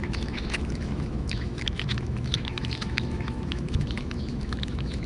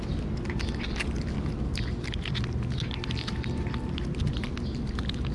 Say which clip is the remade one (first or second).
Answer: first